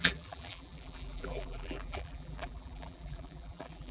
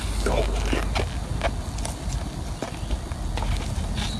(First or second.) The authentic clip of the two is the second